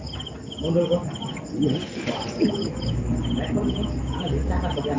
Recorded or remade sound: recorded